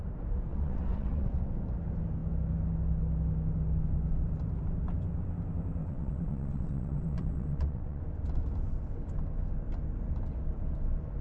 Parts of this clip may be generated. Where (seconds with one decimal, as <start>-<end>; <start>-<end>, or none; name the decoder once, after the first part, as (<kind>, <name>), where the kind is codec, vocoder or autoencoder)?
0.5-1.4 (vocoder, WaveNeXt); 5.8-8.0